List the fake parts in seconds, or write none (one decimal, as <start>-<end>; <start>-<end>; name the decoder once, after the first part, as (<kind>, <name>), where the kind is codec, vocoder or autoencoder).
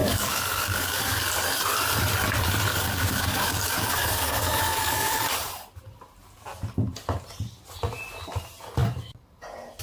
0.0-1.3 (codec, DAC); 2.7-5.2